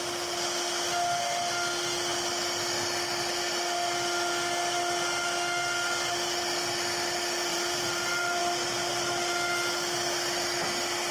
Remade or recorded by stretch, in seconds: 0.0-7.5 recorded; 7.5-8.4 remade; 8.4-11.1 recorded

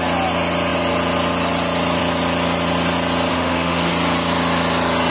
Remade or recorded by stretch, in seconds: 0.0-3.3 recorded; 3.3-3.9 remade; 3.9-5.1 recorded